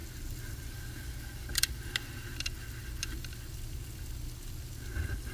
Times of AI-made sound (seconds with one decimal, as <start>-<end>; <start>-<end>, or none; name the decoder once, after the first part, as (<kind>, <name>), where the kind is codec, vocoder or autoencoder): none

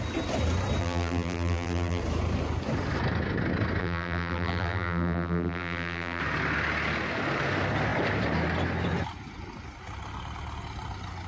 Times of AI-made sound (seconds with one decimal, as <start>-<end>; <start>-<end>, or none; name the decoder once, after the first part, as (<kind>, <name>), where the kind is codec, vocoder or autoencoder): 0.8-2.0 (vocoder, BigVGAN v2); 3.8-6.2

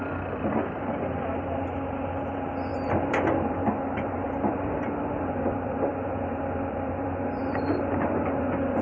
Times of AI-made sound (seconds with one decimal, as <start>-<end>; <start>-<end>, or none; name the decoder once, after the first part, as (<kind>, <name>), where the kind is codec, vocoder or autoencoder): 2.7-7.9 (vocoder, BigVGAN v2)

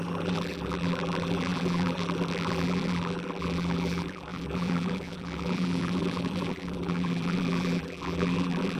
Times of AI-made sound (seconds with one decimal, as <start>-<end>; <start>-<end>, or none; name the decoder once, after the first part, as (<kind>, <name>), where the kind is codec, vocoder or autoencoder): 0.0-8.8 (vocoder, BigVGAN v2)